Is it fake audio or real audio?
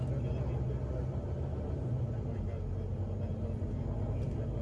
real